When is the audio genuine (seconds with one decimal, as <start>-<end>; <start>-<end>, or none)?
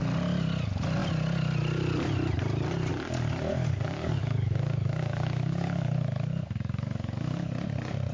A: 0.0-3.5; 7.5-8.1